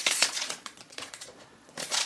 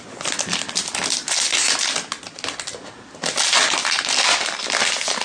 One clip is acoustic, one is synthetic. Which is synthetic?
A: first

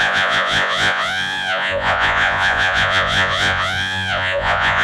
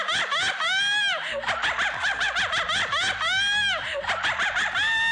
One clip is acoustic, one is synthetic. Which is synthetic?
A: first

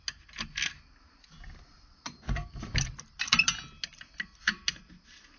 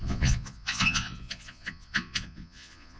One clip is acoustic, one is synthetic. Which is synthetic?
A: second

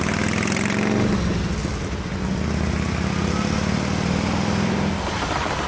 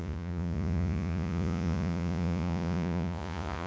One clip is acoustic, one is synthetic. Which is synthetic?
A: second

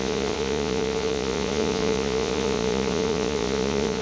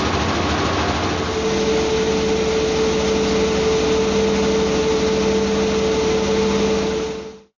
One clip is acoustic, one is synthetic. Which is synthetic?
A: first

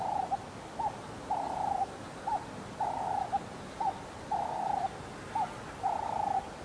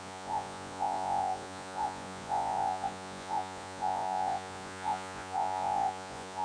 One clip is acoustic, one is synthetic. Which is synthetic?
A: second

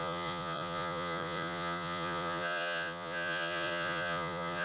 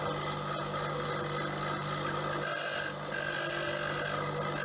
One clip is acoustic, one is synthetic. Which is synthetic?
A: first